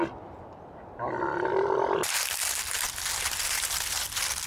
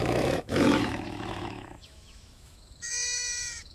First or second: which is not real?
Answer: second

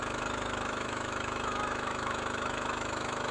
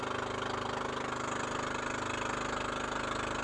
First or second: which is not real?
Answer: first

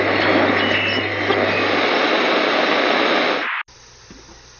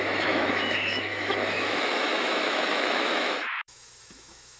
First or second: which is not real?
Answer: second